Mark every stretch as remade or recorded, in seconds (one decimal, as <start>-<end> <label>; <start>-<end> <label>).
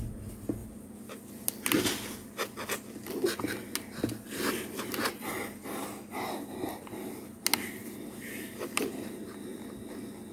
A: 0.0-10.3 recorded